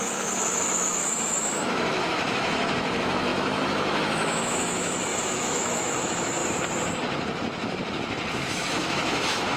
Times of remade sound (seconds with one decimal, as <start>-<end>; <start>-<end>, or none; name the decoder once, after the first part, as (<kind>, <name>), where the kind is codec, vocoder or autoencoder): 0.0-6.4 (autoencoder, DAC-VAE); 8.5-9.6